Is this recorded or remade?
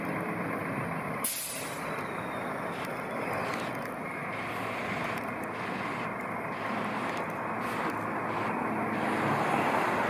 recorded